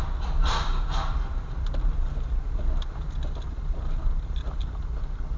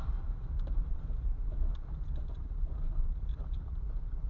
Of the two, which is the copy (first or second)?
second